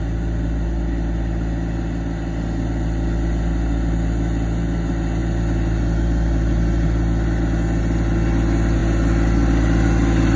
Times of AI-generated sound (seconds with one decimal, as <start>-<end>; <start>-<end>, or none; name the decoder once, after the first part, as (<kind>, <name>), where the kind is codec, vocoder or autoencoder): none